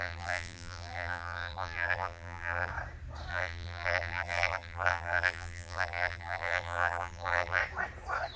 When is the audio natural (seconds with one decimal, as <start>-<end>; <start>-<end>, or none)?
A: 2.7-3.3; 7.6-8.4